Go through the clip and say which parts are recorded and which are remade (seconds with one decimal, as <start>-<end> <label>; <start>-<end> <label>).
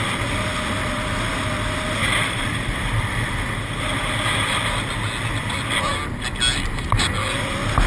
0.0-2.0 recorded; 2.0-3.3 remade; 3.3-7.9 recorded